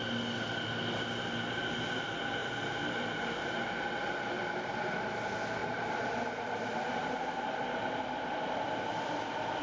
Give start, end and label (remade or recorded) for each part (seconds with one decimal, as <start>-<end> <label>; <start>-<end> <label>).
0.0-2.4 recorded; 2.4-3.6 remade; 3.6-5.6 recorded; 5.6-8.2 remade; 8.2-9.6 recorded